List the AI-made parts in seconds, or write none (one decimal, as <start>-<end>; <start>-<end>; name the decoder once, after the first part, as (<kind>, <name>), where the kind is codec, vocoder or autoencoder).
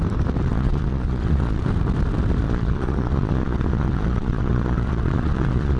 0.5-1.6 (vocoder, Vocos); 2.4-5.8